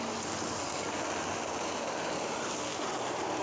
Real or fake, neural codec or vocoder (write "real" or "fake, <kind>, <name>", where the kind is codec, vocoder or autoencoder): real